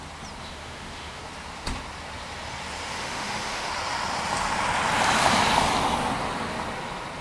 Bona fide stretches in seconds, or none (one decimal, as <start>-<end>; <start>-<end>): 0.0-0.4; 1.2-3.0; 3.7-7.2